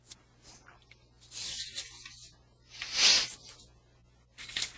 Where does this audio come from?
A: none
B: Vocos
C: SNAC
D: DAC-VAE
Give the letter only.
A